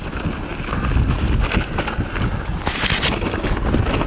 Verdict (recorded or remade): recorded